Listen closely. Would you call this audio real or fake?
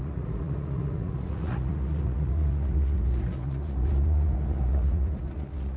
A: fake